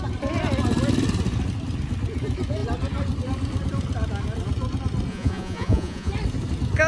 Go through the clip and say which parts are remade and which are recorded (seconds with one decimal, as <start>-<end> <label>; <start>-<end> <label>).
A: 0.0-5.1 recorded; 5.1-6.1 remade; 6.1-6.9 recorded